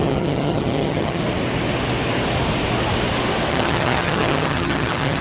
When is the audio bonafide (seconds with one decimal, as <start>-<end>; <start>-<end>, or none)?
1.2-3.5